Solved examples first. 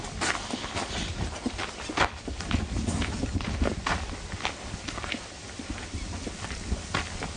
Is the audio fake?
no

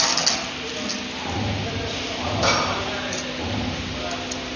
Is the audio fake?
no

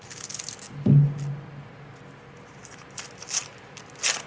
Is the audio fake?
no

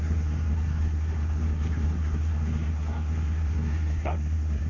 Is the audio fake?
yes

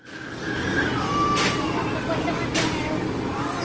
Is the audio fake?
no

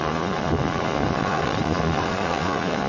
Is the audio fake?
yes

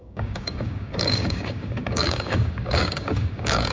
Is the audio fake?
yes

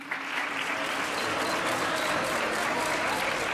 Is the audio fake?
no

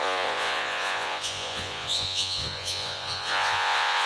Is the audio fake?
yes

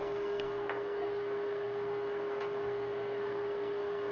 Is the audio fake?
yes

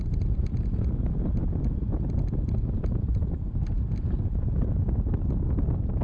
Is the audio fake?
no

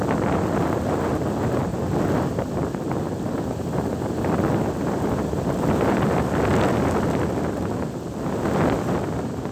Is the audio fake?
no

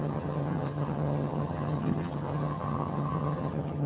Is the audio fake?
yes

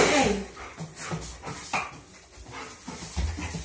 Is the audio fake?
no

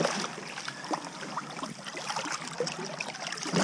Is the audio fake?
no